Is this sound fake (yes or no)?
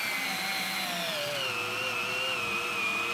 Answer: no